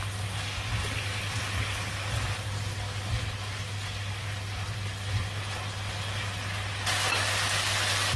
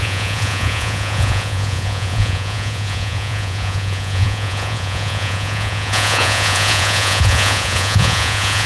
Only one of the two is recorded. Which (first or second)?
first